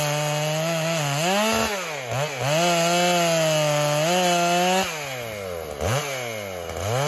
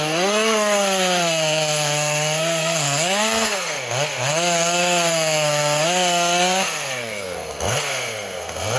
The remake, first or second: second